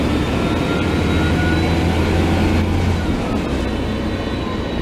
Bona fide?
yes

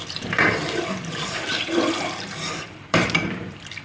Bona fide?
no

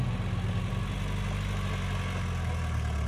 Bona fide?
yes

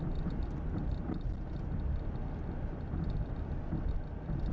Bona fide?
yes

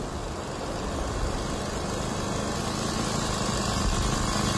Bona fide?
yes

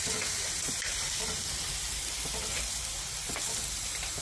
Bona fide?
no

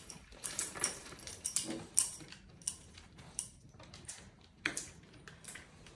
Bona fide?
no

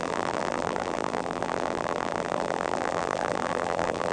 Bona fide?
no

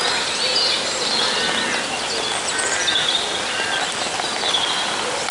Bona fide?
no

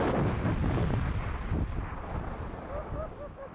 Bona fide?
no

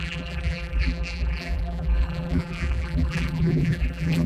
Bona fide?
no